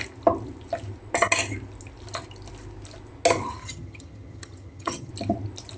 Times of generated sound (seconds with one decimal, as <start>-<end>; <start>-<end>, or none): 3.6-5.1